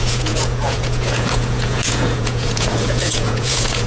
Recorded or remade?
remade